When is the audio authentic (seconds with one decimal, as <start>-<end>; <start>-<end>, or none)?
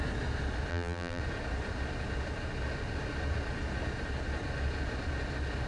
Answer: 0.0-0.7; 1.2-5.7